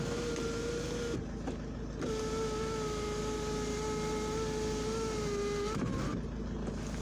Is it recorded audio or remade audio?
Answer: recorded